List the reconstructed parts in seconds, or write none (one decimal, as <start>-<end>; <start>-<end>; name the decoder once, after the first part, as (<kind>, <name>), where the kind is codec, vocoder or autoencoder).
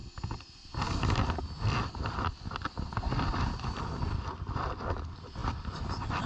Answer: none